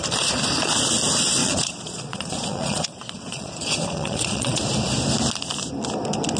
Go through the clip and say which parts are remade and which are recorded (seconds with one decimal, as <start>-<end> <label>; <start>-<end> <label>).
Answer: 0.0-1.4 recorded; 1.4-4.6 remade; 4.6-6.4 recorded